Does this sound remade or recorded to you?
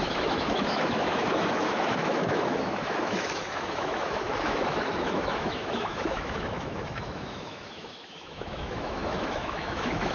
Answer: remade